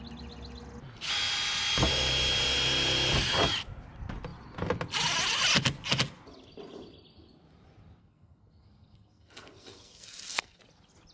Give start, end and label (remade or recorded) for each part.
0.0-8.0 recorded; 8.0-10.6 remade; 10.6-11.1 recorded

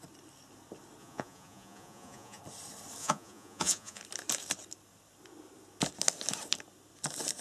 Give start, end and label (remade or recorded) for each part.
0.0-1.0 recorded; 1.0-2.4 remade; 2.4-3.0 recorded; 3.0-4.0 remade; 4.0-7.4 recorded

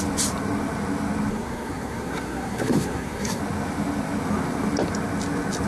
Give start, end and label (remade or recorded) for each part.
0.0-1.3 recorded; 1.3-3.4 remade; 3.4-5.7 recorded

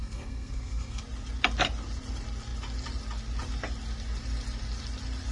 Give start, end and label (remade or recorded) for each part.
0.0-1.0 remade; 1.0-5.3 recorded

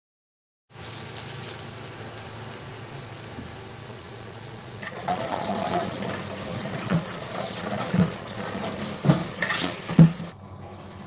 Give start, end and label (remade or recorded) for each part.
0.0-3.8 recorded; 3.8-6.1 remade; 6.1-6.5 recorded; 6.5-8.6 remade; 8.6-9.2 recorded; 9.2-10.2 remade; 10.2-11.1 recorded

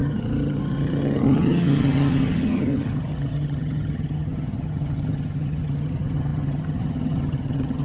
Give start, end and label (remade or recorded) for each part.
0.0-7.8 remade

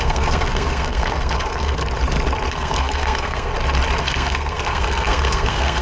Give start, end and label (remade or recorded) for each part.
0.0-1.8 remade; 1.8-2.5 recorded; 2.5-3.5 remade; 3.5-4.0 recorded; 4.0-5.8 remade